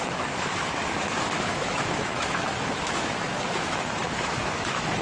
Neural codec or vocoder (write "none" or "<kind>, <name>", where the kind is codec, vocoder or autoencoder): autoencoder, DAC-VAE